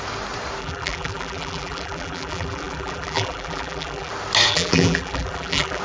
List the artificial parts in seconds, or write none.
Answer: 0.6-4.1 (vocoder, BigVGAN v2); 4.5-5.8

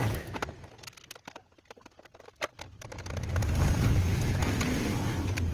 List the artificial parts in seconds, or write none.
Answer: none

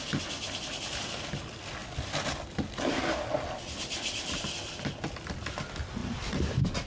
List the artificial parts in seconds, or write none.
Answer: 1.8-3.3 (vocoder, BigVGAN v2); 6.0-6.5